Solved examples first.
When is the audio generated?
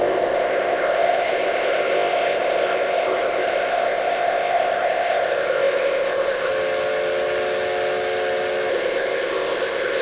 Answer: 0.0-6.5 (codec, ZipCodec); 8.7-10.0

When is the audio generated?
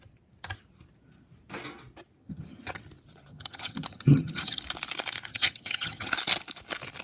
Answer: 2.2-2.8 (vocoder, HiFi-GAN); 3.3-4.6; 5.3-6.1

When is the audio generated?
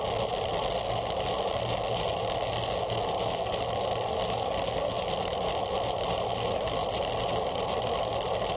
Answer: none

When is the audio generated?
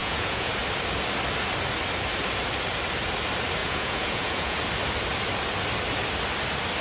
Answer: 0.0-0.5 (vocoder, Vocos); 3.6-4.6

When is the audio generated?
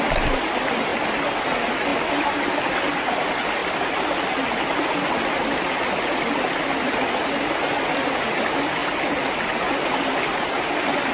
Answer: none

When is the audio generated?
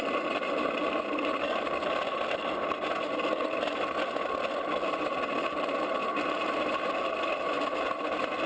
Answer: none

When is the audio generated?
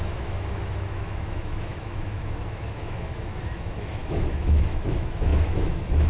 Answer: 0.0-6.1 (autoencoder, DAC-VAE)